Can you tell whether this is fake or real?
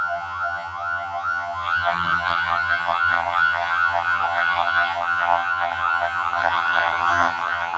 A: fake